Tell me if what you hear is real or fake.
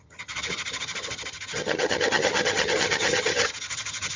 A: fake